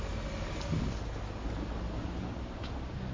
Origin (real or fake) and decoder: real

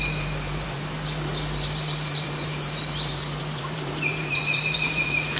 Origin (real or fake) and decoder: fake, vocoder, BigVGAN v2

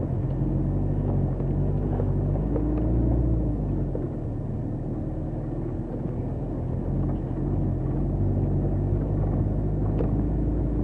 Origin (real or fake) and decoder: real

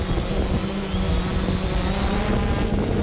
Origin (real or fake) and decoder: real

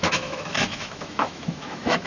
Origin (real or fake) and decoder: fake, autoencoder, DAC-VAE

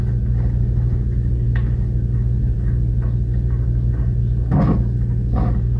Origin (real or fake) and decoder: real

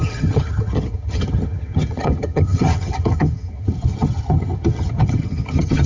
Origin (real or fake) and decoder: fake, vocoder, HiFi-GAN